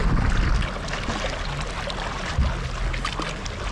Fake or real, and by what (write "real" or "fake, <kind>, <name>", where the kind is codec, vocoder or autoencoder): real